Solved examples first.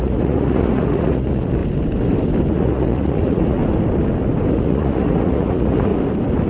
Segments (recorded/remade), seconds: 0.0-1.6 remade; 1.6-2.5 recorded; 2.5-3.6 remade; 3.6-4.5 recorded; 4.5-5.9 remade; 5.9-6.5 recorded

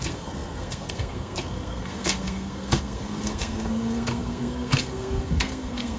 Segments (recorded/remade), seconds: 0.0-6.0 remade

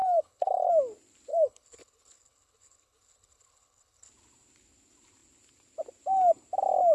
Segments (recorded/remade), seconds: 0.0-0.7 remade; 0.7-1.3 recorded; 1.3-4.1 remade; 4.1-6.9 recorded

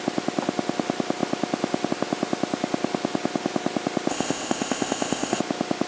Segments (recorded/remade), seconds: 0.0-4.1 recorded; 4.1-5.4 remade; 5.4-5.9 recorded

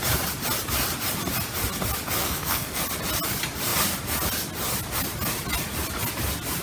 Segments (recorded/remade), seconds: 0.0-2.2 recorded; 2.2-2.8 remade; 2.8-6.6 recorded